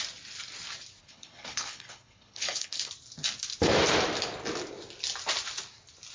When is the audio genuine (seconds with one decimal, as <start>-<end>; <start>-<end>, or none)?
0.0-1.0; 2.9-6.1

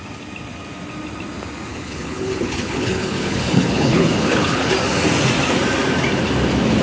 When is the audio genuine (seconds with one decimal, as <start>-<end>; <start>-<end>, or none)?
0.0-1.7; 4.7-6.8